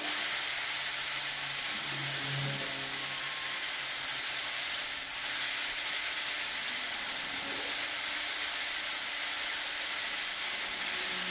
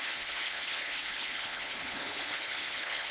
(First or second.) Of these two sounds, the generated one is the second